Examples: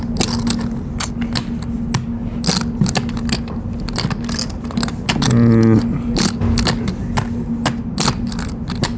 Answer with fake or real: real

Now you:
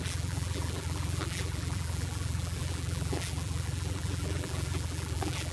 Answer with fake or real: fake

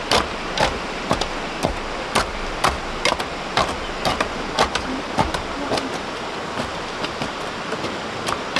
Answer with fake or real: real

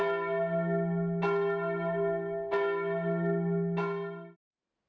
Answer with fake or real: real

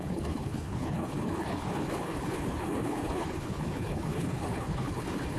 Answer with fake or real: fake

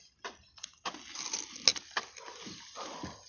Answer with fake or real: real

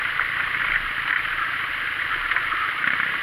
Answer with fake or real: real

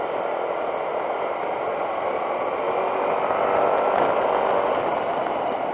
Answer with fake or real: real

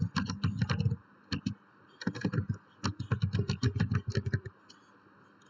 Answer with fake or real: real